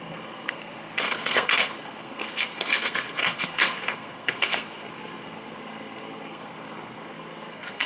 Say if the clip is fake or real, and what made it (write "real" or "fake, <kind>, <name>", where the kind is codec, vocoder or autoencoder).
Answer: fake, codec, SNAC